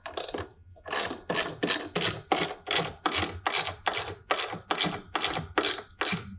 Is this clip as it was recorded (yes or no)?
yes